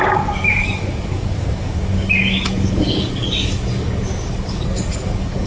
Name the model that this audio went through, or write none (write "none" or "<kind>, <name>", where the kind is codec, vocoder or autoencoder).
codec, DAC